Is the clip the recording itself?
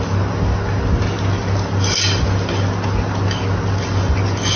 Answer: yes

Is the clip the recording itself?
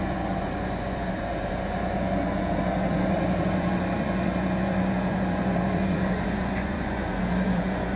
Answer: no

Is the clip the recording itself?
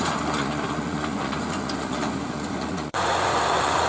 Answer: no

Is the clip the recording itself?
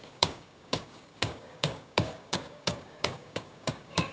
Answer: no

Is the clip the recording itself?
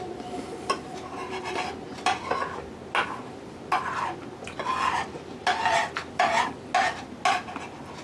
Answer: yes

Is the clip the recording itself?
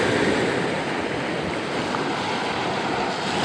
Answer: yes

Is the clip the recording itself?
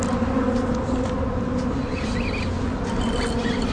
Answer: yes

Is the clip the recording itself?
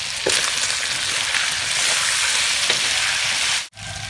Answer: yes